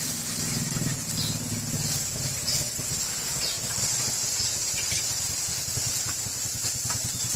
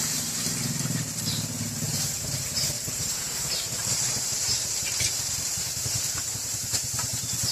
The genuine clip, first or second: first